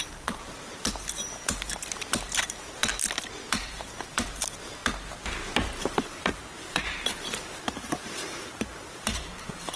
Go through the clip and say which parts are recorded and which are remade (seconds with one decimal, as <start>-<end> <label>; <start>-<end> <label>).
0.0-2.8 remade; 2.8-3.5 recorded; 3.5-4.8 remade; 4.8-5.8 recorded; 5.8-9.8 remade